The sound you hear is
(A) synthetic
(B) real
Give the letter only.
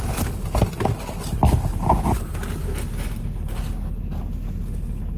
B